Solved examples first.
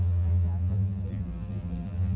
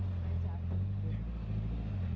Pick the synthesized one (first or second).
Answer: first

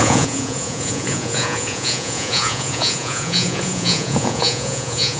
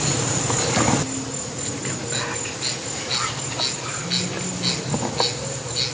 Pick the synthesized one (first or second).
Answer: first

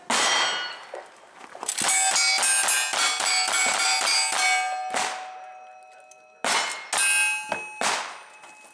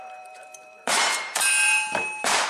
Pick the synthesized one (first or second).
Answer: second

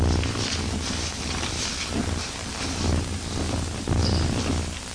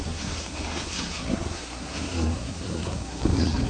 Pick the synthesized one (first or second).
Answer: second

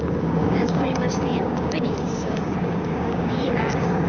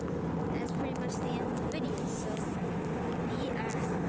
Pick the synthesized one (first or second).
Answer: first